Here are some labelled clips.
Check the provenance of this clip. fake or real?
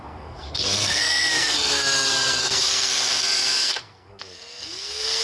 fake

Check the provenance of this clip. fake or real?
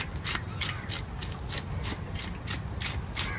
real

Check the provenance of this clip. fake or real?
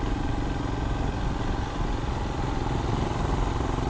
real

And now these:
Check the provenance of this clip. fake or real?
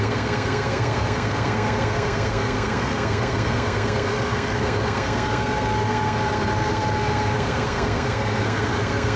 fake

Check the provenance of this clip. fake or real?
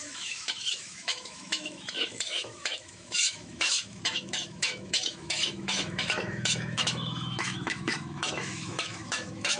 fake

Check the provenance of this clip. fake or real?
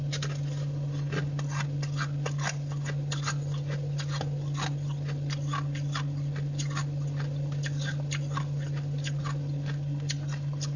real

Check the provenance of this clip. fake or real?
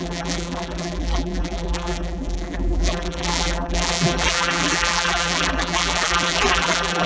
fake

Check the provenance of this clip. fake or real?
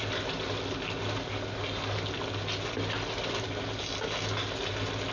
real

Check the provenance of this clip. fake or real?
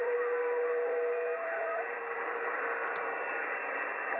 fake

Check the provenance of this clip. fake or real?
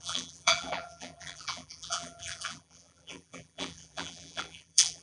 fake